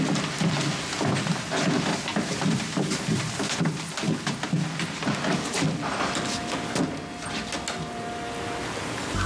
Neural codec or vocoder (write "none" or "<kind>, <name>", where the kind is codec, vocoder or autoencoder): none